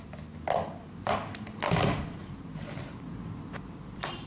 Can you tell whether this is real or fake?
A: real